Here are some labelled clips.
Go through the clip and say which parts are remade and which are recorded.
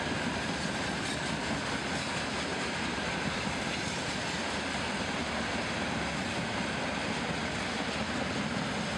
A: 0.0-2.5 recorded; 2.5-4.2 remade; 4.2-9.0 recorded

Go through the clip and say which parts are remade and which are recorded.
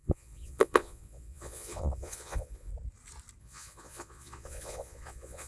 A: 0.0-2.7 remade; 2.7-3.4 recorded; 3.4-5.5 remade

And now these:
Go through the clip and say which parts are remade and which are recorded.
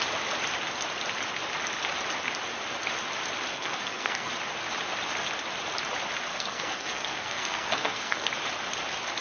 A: 0.0-3.5 recorded; 3.5-4.3 remade; 4.3-6.3 recorded; 6.3-8.3 remade; 8.3-9.2 recorded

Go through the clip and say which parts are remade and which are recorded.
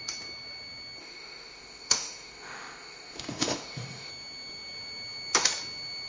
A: 0.0-1.0 recorded; 1.0-4.1 remade; 4.1-6.1 recorded